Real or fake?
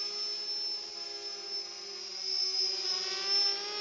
real